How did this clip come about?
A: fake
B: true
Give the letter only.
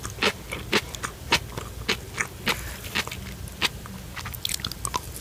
B